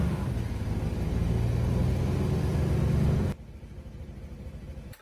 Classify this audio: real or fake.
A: real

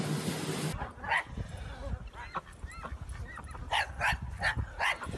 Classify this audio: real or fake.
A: real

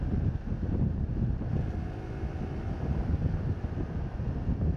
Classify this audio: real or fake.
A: real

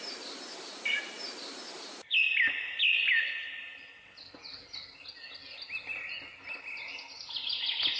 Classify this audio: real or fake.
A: real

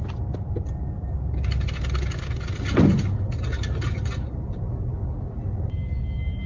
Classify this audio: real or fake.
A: real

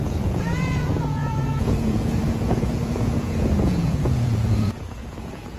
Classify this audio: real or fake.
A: fake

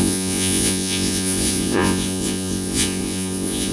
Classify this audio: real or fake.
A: fake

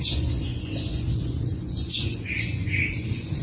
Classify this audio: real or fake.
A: fake